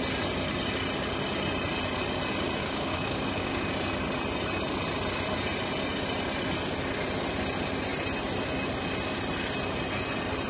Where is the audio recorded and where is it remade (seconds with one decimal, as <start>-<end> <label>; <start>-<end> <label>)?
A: 0.0-2.6 recorded; 2.6-3.7 remade; 3.7-10.5 recorded